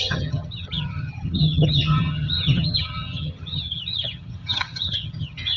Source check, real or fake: fake